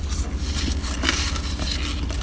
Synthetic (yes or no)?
no